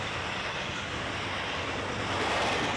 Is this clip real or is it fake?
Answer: real